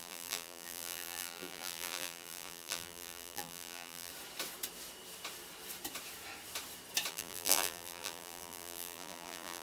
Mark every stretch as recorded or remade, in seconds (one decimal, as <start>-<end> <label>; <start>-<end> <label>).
0.0-4.1 remade; 4.1-7.1 recorded; 7.1-9.6 remade